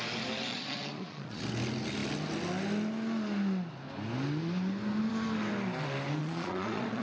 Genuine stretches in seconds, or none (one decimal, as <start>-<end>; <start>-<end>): 0.0-0.5; 1.4-6.2